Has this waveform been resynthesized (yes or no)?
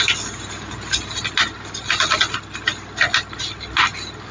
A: no